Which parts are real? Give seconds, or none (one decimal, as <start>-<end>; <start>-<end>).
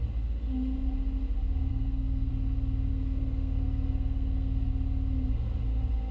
0.0-1.7; 2.3-2.9; 4.7-6.1